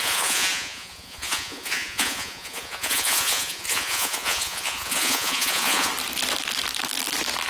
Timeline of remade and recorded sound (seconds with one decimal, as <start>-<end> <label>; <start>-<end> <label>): 0.0-5.9 remade; 5.9-7.5 recorded